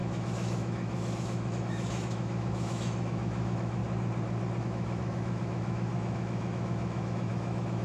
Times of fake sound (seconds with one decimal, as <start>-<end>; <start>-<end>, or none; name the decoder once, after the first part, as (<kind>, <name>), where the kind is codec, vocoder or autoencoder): 0.0-3.8 (autoencoder, DAC-VAE); 4.6-7.8